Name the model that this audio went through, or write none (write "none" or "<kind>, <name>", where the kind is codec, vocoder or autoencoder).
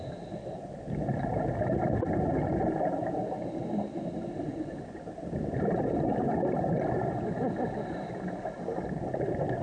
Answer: none